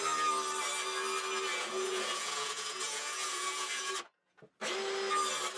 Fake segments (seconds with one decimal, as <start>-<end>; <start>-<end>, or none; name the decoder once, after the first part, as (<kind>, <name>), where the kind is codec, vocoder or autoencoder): 1.5-3.9 (vocoder, Vocos)